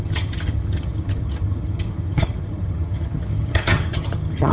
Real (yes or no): no